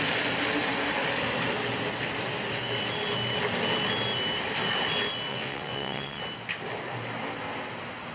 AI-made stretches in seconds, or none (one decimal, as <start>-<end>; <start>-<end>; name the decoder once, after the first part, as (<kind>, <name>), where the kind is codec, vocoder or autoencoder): 5.3-6.2 (vocoder, WaveNeXt)

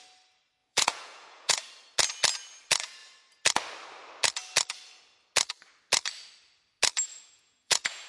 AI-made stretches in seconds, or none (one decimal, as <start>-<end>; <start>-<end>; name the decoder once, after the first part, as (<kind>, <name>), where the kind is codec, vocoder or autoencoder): 0.6-1.6 (vocoder, Vocos); 7.1-8.1

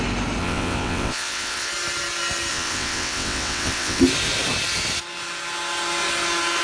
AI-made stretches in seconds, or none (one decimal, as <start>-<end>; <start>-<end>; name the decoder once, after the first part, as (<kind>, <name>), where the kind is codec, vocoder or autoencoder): 0.4-1.7 (vocoder, WaveNeXt); 2.5-4.0

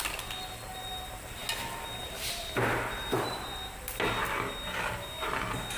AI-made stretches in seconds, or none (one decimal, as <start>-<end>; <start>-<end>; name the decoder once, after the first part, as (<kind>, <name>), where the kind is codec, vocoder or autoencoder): none

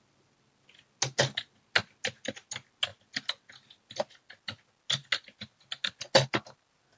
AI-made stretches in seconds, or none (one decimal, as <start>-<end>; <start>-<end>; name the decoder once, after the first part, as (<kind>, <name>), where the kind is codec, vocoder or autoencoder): none

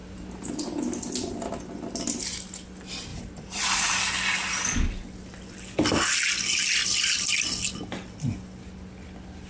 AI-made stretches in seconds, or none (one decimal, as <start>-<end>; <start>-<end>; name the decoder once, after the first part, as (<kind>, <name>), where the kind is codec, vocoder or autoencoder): 0.0-0.5 (vocoder, BigVGAN v2); 3.1-4.0

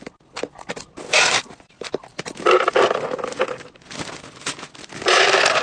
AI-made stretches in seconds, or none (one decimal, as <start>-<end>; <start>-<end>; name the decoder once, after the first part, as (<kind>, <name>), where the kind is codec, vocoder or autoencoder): none